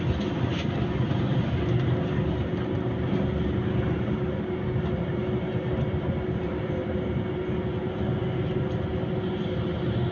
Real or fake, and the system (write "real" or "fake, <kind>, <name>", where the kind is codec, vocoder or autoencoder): real